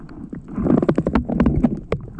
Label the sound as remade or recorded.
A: recorded